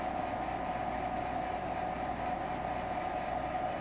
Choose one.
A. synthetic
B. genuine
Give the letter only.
B